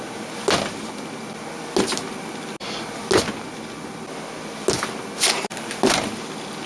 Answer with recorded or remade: recorded